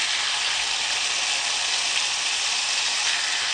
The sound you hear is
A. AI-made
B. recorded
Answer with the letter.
B